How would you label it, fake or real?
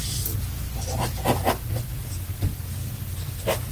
real